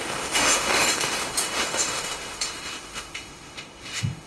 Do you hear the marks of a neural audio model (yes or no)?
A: yes